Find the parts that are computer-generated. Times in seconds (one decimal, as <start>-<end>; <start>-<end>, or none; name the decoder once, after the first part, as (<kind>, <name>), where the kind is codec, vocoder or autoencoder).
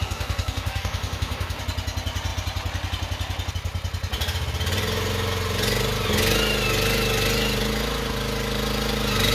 0.0-1.6 (codec, DAC)